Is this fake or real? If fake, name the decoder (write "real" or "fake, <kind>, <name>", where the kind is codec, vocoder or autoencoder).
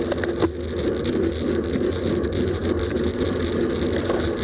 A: real